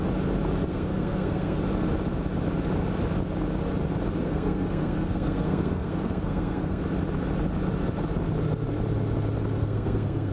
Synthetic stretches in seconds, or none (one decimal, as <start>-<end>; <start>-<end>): 0.7-1.6; 4.2-6.8; 9.6-10.3